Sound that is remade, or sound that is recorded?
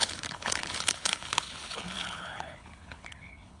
remade